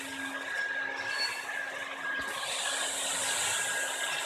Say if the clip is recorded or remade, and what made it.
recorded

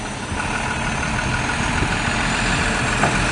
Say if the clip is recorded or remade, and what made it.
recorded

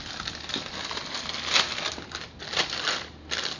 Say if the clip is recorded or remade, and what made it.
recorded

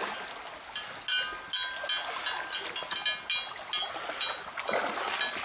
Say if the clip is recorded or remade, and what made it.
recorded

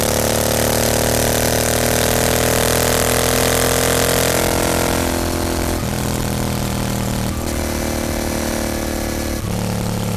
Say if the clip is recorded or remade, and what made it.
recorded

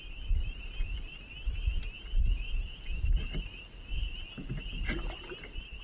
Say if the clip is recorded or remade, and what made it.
recorded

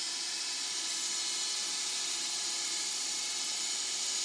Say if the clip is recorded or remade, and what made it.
recorded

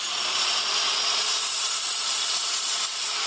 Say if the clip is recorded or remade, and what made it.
remade, vocoder, Vocos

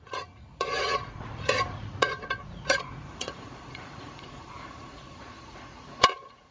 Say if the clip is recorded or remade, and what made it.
remade, vocoder, Vocos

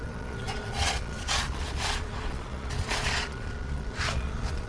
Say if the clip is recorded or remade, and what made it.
remade, vocoder, Vocos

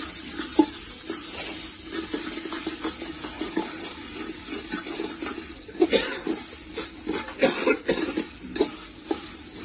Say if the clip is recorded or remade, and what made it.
recorded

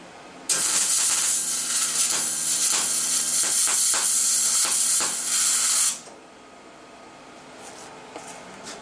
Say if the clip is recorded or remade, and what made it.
recorded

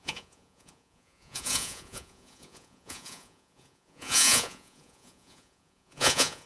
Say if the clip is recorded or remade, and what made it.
remade, vocoder, Vocos